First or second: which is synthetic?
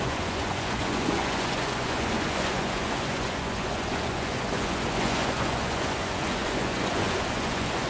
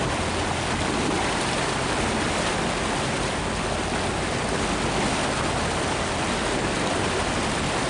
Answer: first